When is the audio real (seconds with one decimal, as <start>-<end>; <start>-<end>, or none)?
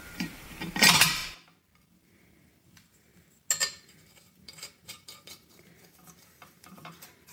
1.2-1.9; 3.1-3.6